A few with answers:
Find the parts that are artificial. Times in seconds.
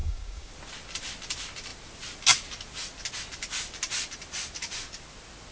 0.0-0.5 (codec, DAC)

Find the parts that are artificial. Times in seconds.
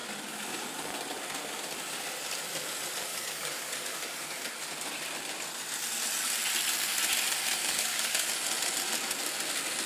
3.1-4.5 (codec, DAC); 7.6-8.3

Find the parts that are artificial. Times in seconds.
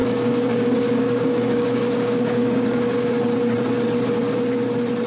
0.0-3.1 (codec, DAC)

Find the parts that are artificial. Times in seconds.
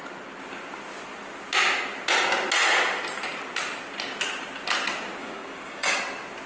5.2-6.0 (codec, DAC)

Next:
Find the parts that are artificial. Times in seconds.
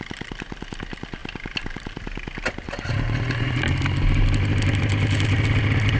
none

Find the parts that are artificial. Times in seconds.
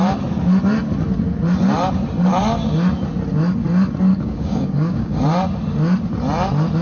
4.1-5.2 (codec, DAC)